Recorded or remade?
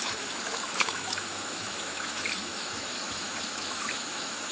remade